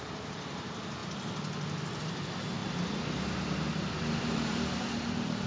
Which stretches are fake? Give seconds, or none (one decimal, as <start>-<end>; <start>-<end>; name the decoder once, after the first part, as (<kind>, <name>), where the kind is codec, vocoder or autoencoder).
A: 0.0-1.0 (vocoder, BigVGAN v2); 2.0-2.6; 4.2-5.5

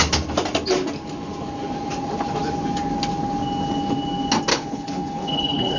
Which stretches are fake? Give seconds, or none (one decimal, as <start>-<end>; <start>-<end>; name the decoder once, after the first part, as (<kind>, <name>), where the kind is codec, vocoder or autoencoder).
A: 4.5-5.8 (codec, HILCodec)

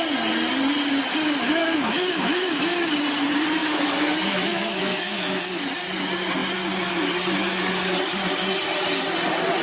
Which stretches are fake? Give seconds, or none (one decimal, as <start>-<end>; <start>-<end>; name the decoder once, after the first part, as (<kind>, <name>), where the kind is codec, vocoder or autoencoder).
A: 1.6-2.6 (autoencoder, DAC-VAE); 3.6-5.5